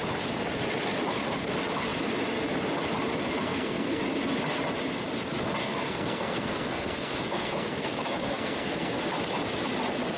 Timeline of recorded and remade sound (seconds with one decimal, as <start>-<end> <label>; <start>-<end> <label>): 0.0-3.4 recorded; 3.4-4.0 remade; 4.0-5.6 recorded; 5.6-9.0 remade; 9.0-10.2 recorded